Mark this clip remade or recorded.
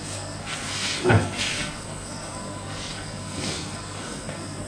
remade